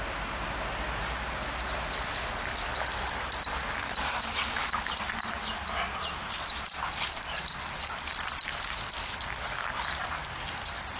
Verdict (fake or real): real